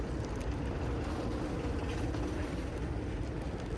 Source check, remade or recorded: recorded